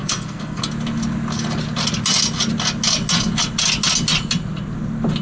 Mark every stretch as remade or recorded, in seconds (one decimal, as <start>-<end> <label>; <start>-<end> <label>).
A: 0.0-0.6 remade; 0.6-5.2 recorded